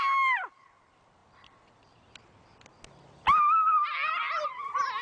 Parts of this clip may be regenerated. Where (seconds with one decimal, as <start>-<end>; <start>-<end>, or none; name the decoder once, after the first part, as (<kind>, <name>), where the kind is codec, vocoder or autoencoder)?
none